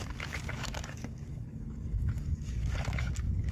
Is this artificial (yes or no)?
yes